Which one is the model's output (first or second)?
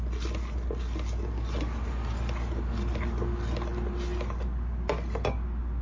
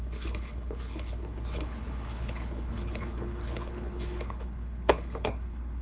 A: second